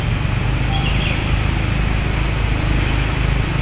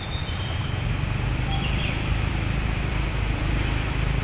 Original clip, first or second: first